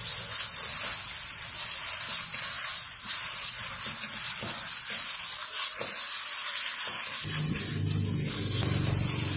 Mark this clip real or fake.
real